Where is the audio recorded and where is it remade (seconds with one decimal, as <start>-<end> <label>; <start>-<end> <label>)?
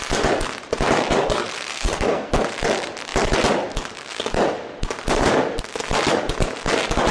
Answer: 0.0-1.7 recorded; 1.7-2.3 remade; 2.3-7.1 recorded